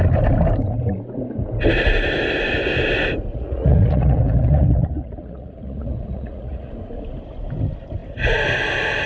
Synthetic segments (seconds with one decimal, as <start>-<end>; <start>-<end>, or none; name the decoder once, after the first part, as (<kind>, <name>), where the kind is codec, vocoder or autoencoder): 3.3-6.7 (vocoder, Vocos)